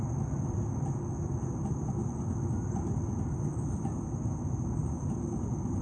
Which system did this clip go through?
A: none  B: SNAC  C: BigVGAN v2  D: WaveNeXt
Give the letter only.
A